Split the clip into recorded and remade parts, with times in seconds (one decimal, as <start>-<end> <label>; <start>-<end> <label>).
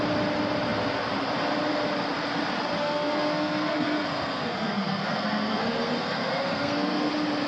0.0-2.8 recorded; 2.8-7.1 remade; 7.1-7.5 recorded